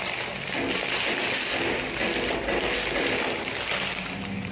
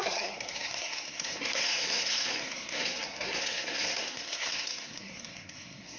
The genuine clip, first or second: first